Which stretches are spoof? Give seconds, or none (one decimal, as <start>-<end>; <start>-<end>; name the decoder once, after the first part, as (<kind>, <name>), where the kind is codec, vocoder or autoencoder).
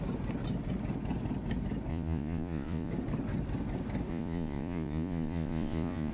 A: 1.9-2.9 (vocoder, Vocos); 4.1-6.1